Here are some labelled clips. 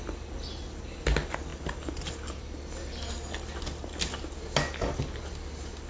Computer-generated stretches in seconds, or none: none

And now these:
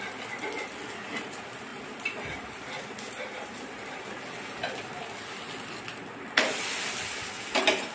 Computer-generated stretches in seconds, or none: none